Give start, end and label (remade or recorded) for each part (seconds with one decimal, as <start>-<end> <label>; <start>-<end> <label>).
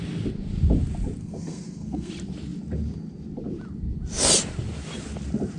0.0-1.2 recorded; 1.2-2.1 remade; 2.1-5.6 recorded